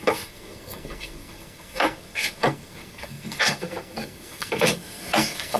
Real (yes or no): no